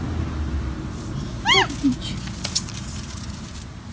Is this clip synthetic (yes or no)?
no